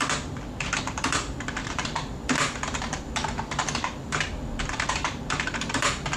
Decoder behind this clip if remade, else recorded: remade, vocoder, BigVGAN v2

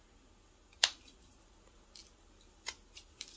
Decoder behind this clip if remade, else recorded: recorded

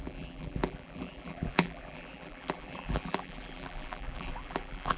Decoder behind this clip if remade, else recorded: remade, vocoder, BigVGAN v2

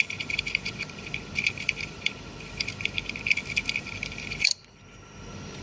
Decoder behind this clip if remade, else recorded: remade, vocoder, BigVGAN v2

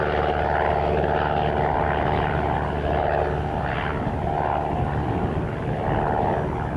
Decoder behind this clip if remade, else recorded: recorded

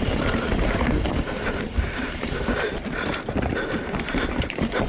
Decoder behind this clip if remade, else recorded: remade, vocoder, BigVGAN v2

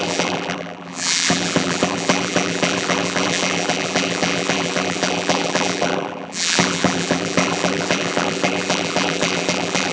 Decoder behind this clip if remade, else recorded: remade, vocoder, BigVGAN v2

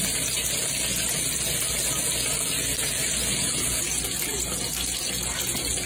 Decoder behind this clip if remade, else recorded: recorded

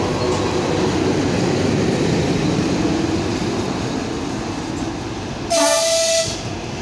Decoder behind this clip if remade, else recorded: recorded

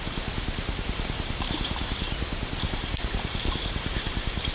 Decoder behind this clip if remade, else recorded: remade, vocoder, BigVGAN v2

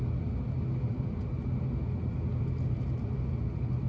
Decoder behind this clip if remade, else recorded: recorded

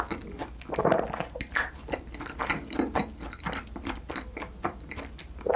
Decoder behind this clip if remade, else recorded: recorded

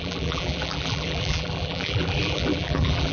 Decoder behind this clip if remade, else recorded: remade, vocoder, BigVGAN v2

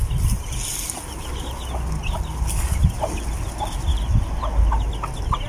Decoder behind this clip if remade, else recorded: recorded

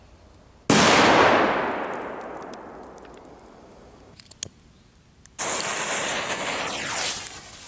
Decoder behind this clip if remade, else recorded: recorded